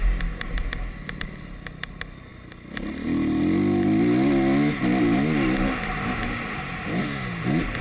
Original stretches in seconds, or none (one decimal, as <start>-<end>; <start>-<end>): 0.0-7.8